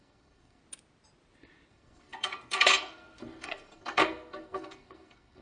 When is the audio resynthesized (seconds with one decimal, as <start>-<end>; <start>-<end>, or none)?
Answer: 0.0-0.6; 1.7-5.4

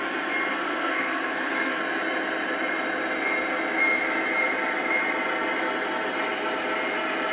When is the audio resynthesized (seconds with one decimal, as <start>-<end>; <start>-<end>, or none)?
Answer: 0.5-1.8

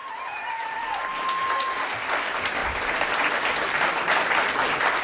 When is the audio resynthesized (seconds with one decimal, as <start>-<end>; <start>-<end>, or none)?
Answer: none

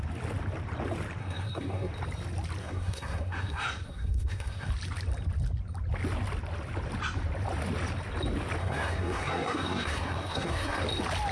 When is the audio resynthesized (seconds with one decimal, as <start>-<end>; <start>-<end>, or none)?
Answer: 1.2-1.9; 2.6-4.7; 8.6-10.8

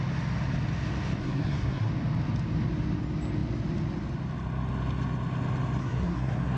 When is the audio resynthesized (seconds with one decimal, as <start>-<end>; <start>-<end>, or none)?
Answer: 1.2-1.9; 5.8-6.6

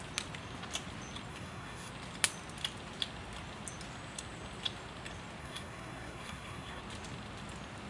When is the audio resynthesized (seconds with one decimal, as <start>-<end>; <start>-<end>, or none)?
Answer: 1.3-1.9; 5.4-6.8